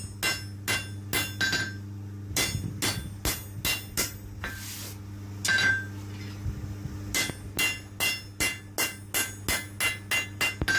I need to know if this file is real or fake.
real